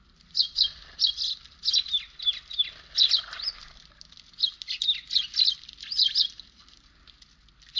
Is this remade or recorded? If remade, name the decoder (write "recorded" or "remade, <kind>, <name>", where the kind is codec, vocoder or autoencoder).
recorded